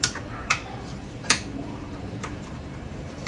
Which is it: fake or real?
fake